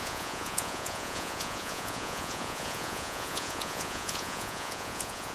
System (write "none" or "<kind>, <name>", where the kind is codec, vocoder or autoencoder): vocoder, Vocos